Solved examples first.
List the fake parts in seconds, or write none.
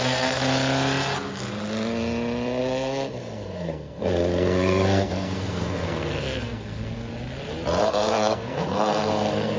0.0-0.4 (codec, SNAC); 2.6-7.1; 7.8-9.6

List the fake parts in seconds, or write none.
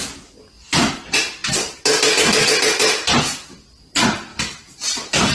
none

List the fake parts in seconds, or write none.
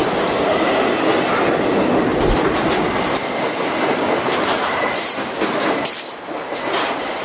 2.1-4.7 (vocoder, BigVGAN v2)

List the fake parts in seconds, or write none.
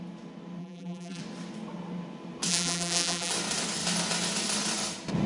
0.6-1.2 (vocoder, BigVGAN v2); 2.5-3.3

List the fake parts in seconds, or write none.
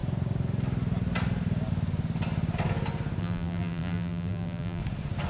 3.2-4.8 (vocoder, BigVGAN v2)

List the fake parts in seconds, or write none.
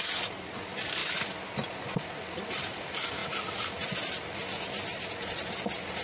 none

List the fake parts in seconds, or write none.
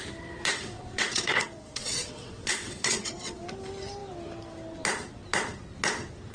0.5-3.4 (vocoder, WaveNeXt)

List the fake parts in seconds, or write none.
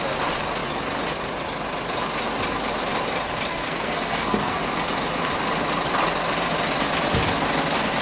3.5-4.6 (codec, SNAC)